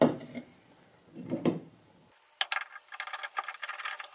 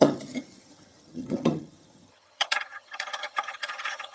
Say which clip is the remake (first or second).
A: second